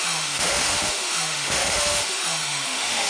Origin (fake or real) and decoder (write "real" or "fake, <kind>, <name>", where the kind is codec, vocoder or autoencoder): fake, autoencoder, DAC-VAE